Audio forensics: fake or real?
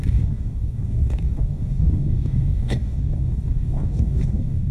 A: fake